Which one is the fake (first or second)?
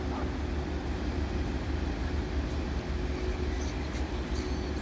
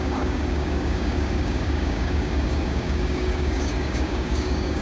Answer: second